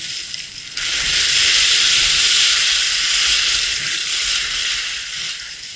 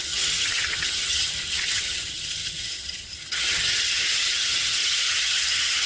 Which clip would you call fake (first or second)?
second